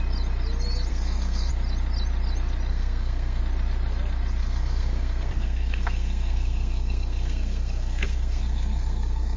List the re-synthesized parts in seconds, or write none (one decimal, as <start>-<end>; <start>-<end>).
0.9-1.5; 2.7-3.4; 4.4-9.4